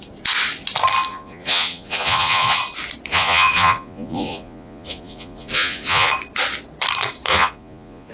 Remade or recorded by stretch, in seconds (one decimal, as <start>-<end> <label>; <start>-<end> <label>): 0.0-1.1 recorded; 1.1-2.6 remade; 2.6-3.1 recorded; 3.1-6.1 remade; 6.1-7.3 recorded; 7.3-8.1 remade